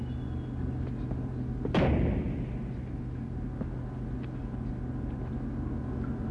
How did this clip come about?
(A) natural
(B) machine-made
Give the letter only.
A